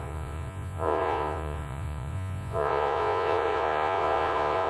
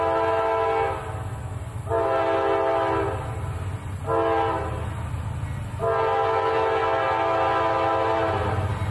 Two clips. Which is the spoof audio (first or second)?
first